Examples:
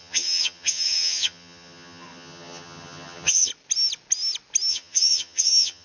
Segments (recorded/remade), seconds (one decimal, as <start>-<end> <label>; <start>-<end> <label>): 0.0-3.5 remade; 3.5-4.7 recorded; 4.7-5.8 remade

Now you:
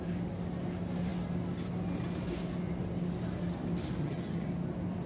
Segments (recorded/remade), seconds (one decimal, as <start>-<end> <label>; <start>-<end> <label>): 0.0-4.0 recorded; 4.0-4.5 remade; 4.5-5.1 recorded

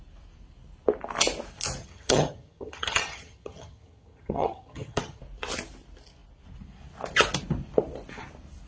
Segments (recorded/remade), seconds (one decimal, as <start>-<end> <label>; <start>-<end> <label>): 0.0-1.8 recorded; 1.8-5.2 remade; 5.2-8.7 recorded